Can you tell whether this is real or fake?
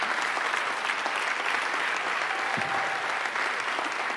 real